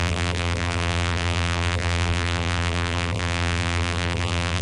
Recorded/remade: remade